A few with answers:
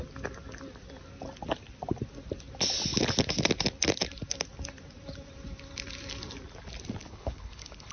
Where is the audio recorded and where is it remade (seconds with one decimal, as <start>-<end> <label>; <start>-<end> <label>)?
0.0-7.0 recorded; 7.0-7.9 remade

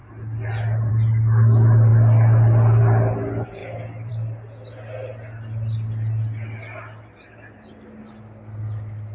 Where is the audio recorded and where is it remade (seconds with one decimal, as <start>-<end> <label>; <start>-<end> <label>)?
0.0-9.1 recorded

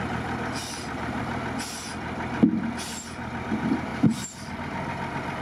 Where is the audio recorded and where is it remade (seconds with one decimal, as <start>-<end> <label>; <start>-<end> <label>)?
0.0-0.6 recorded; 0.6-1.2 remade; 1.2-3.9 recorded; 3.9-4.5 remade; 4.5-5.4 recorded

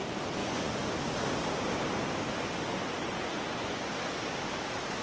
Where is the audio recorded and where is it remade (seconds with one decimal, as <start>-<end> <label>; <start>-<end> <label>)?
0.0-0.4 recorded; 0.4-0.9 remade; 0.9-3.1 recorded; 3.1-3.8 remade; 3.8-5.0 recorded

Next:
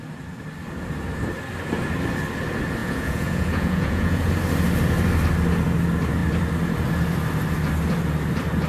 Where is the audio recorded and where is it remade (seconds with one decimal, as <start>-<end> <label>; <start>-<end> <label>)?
0.0-2.8 recorded; 2.8-4.3 remade; 4.3-8.7 recorded

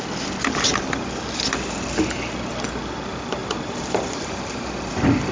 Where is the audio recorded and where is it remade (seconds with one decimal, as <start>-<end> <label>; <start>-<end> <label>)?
0.0-3.4 recorded; 3.4-5.3 remade

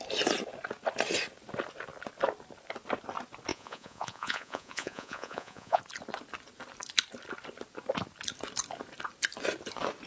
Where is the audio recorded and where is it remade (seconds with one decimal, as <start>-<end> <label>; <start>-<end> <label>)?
0.0-3.5 recorded; 3.5-5.8 remade; 5.8-10.1 recorded